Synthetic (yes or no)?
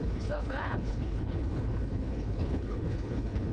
yes